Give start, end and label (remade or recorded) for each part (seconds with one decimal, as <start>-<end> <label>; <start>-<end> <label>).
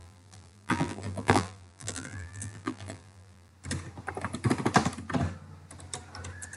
0.0-3.5 remade; 3.5-6.6 recorded